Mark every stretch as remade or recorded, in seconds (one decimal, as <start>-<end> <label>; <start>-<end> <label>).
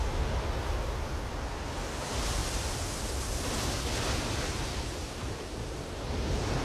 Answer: 0.0-2.4 recorded; 2.4-5.8 remade; 5.8-6.6 recorded